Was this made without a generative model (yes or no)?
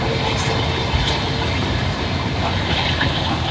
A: yes